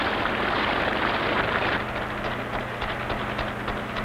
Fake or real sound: real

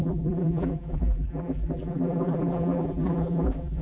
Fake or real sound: fake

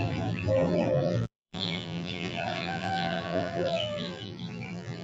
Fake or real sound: fake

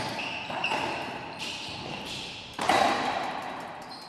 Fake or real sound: fake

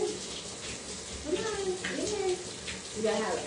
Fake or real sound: real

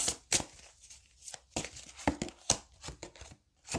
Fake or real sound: real